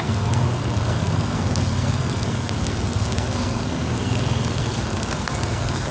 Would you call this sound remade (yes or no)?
yes